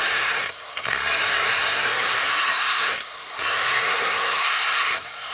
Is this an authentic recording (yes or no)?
no